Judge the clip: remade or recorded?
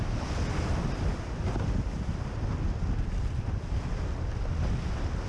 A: recorded